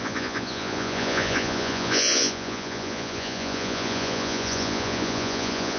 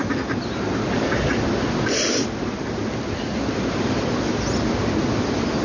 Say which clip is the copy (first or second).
first